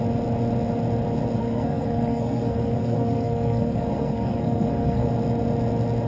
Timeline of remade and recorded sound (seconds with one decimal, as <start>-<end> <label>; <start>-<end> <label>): 0.0-1.4 recorded; 1.4-5.1 remade; 5.1-6.1 recorded